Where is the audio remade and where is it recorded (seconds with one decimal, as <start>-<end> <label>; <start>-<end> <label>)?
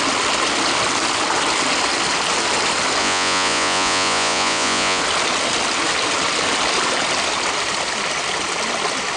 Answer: 0.0-3.0 recorded; 3.0-5.0 remade; 5.0-9.2 recorded